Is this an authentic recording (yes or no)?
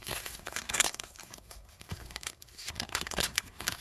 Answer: no